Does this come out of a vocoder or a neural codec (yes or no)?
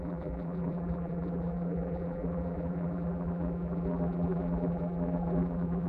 yes